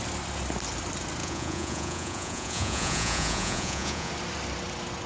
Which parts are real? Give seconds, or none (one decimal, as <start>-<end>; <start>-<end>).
0.0-1.2; 4.1-5.1